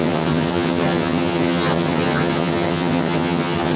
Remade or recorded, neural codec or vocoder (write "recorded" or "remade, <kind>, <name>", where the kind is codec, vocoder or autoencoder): remade, vocoder, HiFi-GAN